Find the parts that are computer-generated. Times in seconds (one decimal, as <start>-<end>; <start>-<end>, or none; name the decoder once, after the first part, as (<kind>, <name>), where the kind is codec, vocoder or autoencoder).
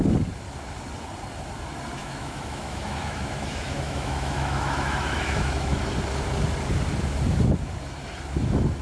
2.0-5.8 (autoencoder, DAC-VAE)